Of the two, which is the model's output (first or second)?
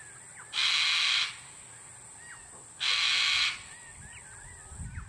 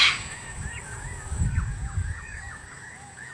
second